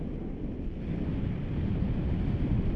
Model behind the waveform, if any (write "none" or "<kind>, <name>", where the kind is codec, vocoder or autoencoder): none